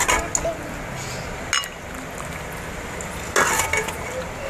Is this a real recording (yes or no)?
yes